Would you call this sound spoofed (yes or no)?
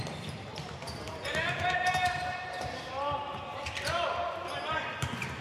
yes